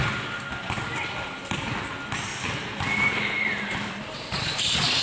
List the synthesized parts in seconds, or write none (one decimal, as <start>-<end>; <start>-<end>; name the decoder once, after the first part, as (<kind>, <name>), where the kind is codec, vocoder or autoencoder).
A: 2.3-3.9 (vocoder, BigVGAN v2)

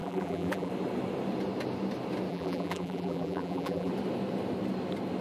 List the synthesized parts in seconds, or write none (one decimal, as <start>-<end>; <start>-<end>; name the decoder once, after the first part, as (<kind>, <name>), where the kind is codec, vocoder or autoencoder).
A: 0.0-0.7 (vocoder, BigVGAN v2); 2.3-3.9

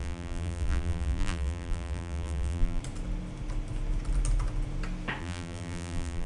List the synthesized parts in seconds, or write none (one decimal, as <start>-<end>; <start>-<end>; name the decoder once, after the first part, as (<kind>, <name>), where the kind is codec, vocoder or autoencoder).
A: 0.0-2.8 (vocoder, BigVGAN v2); 5.2-6.3

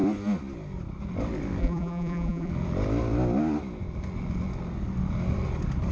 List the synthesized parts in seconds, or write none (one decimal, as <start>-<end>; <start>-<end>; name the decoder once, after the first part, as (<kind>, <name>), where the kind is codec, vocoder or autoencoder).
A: 1.6-2.5 (vocoder, BigVGAN v2)